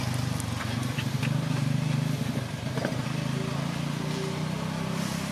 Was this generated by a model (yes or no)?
no